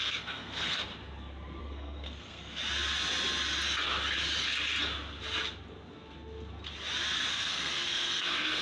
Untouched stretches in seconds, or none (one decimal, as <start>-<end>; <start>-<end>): 0.9-1.6; 2.6-7.3